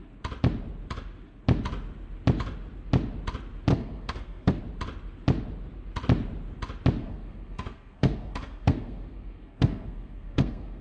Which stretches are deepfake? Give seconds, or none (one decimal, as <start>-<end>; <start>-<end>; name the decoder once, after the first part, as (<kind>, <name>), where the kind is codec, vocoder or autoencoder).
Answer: 3.7-4.6 (codec, SNAC); 7.0-10.8